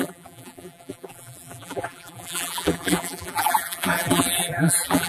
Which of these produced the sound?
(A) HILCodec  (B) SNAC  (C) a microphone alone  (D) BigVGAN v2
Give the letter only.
D